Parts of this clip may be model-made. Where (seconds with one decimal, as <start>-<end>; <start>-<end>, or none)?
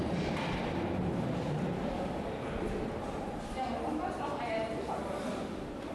none